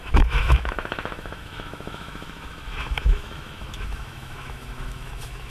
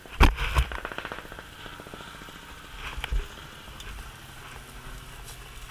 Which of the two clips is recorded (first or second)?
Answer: second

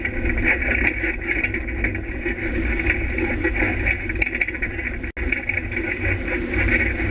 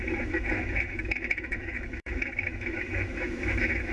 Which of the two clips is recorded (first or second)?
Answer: first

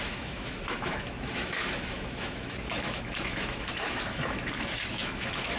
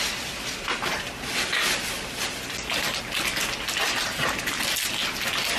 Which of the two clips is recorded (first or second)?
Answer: second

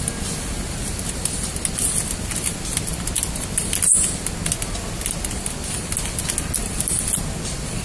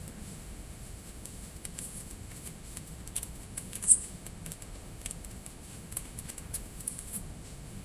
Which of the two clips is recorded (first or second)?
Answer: first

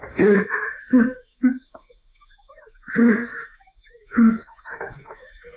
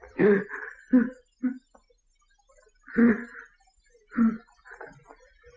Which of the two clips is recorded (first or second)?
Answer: second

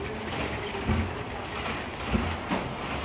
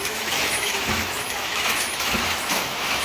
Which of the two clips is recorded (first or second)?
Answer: first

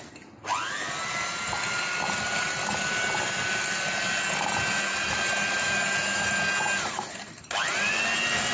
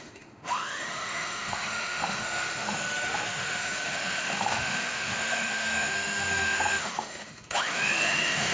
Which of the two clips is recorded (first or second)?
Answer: first